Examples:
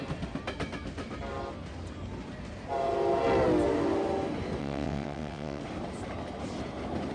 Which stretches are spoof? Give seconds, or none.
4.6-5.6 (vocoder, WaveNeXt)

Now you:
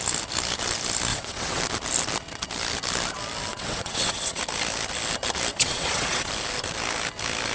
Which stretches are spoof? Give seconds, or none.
1.1-1.6 (vocoder, WaveNeXt); 3.5-4.4; 5.5-6.3

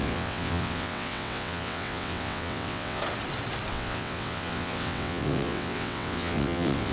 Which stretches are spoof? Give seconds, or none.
0.0-3.0 (vocoder, WaveNeXt); 3.7-6.9

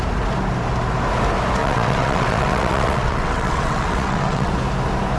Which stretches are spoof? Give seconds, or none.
1.6-4.5 (vocoder, WaveNeXt)

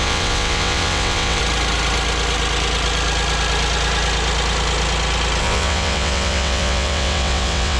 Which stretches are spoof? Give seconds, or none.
0.0-1.4 (vocoder, WaveNeXt); 5.4-7.8

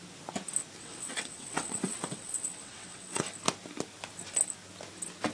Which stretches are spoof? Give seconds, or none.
0.8-3.2 (vocoder, WaveNeXt)